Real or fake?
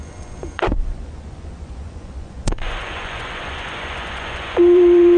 fake